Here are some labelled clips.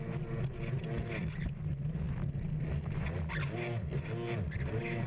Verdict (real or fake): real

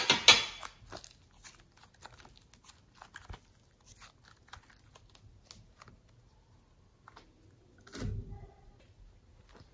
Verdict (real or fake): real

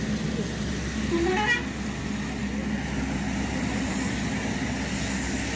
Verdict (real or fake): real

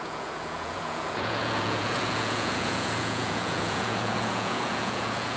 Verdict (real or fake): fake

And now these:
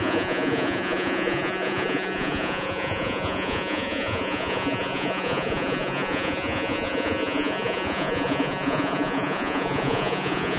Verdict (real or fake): fake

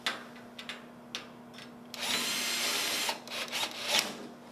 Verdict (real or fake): real